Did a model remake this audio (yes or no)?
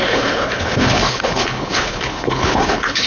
yes